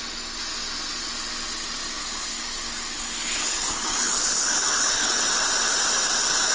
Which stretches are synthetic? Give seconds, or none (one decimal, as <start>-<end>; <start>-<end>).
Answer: 2.0-5.2